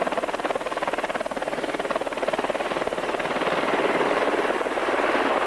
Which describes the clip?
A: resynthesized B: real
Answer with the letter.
B